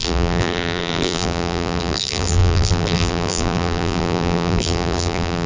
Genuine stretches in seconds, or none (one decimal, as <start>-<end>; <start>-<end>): none